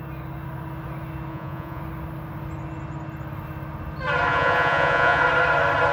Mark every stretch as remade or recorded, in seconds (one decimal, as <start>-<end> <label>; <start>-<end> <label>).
0.0-1.3 recorded; 1.3-1.8 remade; 1.8-4.3 recorded; 4.3-5.2 remade; 5.2-5.9 recorded